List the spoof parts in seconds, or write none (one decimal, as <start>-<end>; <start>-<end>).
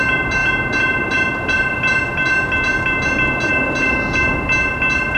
none